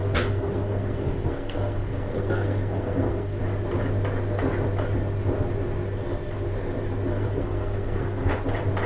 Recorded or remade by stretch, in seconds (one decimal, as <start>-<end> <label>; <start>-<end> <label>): 0.0-3.4 remade; 3.4-7.1 recorded; 7.1-8.4 remade; 8.4-8.9 recorded